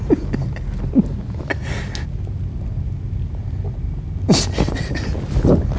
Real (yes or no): yes